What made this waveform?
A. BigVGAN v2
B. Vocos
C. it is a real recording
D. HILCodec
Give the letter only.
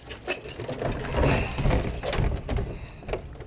C